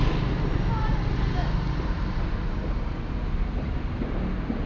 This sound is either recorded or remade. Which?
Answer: recorded